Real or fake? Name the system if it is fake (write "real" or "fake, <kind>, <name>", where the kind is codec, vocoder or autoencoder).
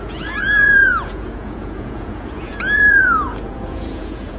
fake, vocoder, Vocos